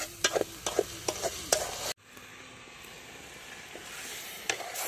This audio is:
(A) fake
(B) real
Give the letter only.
B